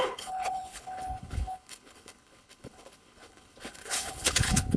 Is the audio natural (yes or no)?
no